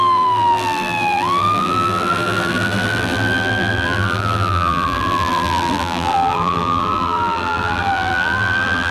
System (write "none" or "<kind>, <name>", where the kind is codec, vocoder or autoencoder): vocoder, BigVGAN v2